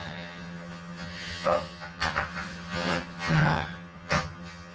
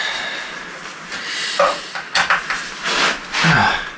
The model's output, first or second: first